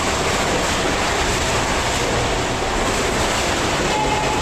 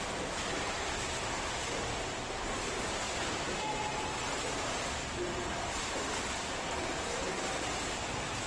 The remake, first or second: second